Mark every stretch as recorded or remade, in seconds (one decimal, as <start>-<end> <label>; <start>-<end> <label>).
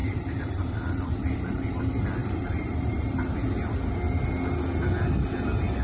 0.0-1.8 remade; 1.8-2.2 recorded; 2.2-3.2 remade; 3.2-5.8 recorded